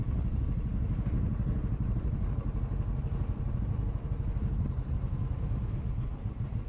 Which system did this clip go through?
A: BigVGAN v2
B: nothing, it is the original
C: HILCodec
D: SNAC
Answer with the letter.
B